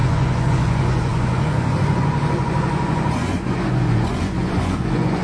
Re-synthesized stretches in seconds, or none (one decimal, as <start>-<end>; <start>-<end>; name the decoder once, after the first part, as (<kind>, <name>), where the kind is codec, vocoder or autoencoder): 0.0-5.2 (vocoder, Vocos)